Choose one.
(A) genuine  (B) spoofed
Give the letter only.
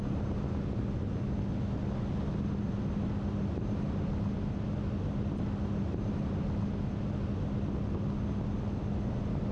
A